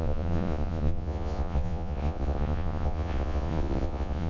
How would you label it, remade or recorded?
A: remade